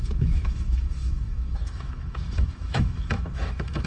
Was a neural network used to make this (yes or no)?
yes